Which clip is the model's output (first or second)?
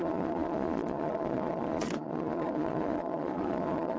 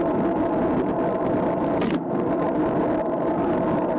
first